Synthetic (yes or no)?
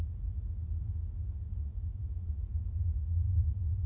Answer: no